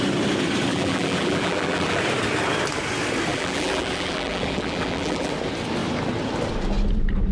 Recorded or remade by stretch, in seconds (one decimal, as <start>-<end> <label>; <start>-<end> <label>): 0.0-0.7 recorded; 0.7-2.0 remade; 2.0-3.3 recorded; 3.3-5.3 remade; 5.3-7.3 recorded